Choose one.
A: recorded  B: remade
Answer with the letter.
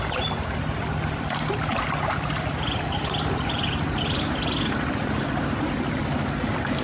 A